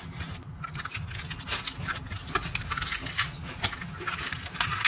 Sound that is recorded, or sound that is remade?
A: recorded